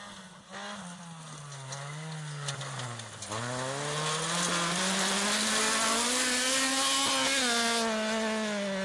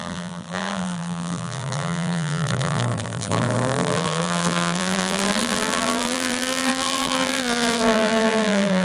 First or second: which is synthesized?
second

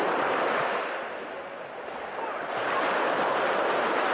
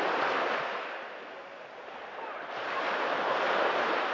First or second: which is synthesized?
second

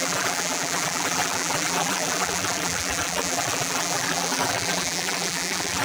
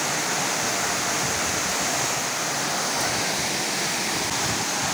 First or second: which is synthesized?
first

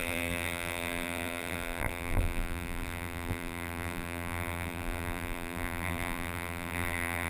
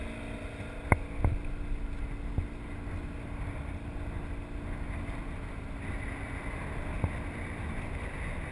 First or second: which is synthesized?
first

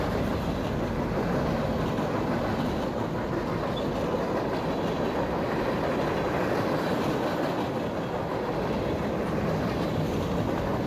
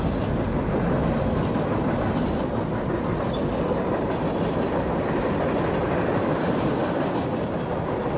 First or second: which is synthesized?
second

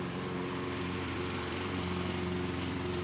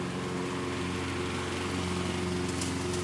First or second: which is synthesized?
first